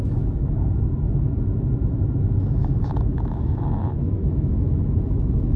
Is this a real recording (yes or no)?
no